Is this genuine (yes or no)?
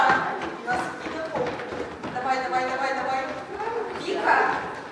yes